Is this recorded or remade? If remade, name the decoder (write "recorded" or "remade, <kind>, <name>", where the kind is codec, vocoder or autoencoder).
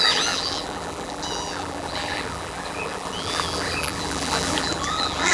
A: remade, vocoder, BigVGAN v2